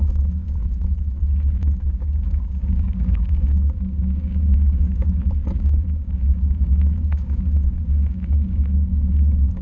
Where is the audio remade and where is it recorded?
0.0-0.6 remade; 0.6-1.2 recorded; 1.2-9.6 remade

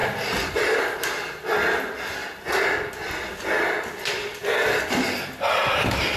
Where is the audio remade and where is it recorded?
0.0-6.2 recorded

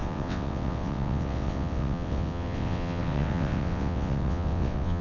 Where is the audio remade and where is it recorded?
0.0-5.0 remade

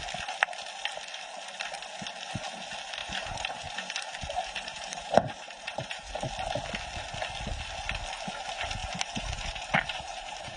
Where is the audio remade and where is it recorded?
0.0-3.0 recorded; 3.0-6.1 remade; 6.1-8.8 recorded; 8.8-10.6 remade

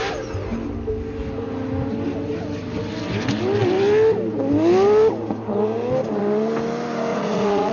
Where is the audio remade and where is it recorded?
0.0-7.1 recorded; 7.1-7.7 remade

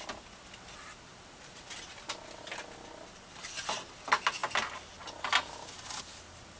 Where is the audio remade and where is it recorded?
0.0-6.6 recorded